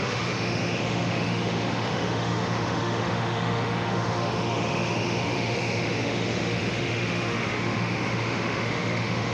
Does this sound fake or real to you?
fake